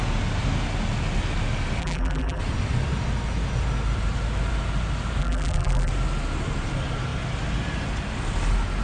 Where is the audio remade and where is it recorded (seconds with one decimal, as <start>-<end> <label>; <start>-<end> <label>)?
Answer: 0.0-1.8 recorded; 1.8-2.4 remade; 2.4-5.2 recorded; 5.2-5.9 remade; 5.9-8.8 recorded